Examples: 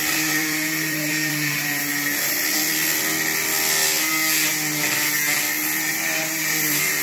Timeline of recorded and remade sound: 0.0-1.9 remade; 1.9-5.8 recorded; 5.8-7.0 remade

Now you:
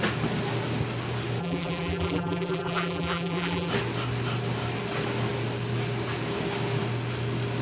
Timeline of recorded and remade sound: 0.0-1.4 recorded; 1.4-3.7 remade; 3.7-7.6 recorded

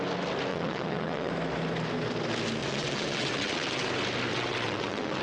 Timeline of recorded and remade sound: 0.0-0.5 recorded; 0.5-1.3 remade; 1.3-2.6 recorded; 2.6-3.9 remade; 3.9-4.3 recorded; 4.3-5.2 remade

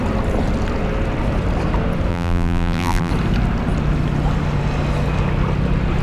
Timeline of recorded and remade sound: 0.0-2.1 recorded; 2.1-3.1 remade; 3.1-6.0 recorded